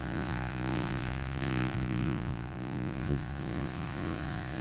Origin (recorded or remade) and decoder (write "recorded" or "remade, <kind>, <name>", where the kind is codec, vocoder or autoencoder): remade, vocoder, Vocos